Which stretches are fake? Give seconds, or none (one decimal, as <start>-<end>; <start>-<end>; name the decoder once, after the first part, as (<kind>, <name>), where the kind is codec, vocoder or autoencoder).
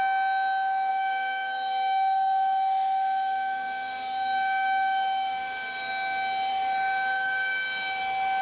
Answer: 0.9-5.9 (codec, DAC); 6.5-8.0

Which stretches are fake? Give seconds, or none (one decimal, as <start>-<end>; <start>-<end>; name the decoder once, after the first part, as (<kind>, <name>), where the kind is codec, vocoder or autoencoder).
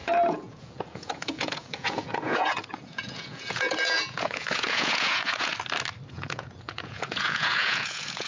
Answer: 0.0-5.5 (vocoder, Vocos); 6.1-8.3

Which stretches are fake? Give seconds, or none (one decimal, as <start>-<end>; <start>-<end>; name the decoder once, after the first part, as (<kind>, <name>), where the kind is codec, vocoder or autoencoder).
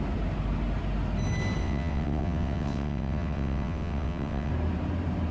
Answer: 1.6-4.5 (vocoder, WaveNeXt)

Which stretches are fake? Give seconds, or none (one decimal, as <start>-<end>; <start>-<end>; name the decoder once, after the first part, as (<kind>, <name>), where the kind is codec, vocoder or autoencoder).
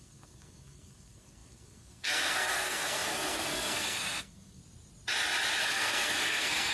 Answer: 0.0-4.6 (codec, SNAC); 5.6-6.7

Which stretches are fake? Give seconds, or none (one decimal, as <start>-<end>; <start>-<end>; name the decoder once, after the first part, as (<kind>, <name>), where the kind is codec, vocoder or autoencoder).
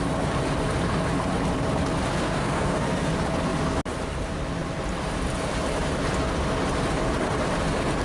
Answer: 2.1-3.1 (codec, SNAC)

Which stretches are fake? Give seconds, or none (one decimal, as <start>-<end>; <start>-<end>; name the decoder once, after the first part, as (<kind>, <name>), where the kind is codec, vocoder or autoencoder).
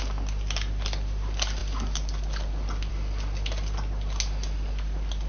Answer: none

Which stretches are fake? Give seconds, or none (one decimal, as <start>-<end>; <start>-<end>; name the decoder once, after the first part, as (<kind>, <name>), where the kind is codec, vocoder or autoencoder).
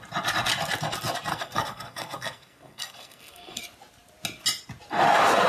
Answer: 1.3-3.6 (codec, SNAC)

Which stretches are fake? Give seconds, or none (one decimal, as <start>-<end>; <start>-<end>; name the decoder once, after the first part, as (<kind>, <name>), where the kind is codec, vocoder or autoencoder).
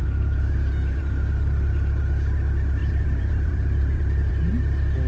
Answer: 2.8-4.2 (vocoder, BigVGAN v2)